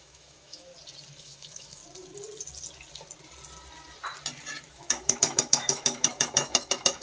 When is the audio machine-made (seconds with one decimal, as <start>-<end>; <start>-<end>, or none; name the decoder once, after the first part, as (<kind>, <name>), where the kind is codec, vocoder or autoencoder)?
0.0-0.7 (autoencoder, DAC-VAE); 1.2-1.8; 4.7-7.0